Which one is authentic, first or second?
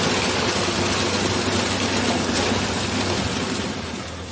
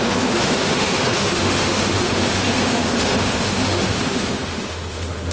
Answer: first